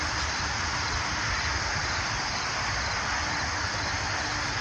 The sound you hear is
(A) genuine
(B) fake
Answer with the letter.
A